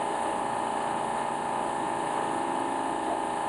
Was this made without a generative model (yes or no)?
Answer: yes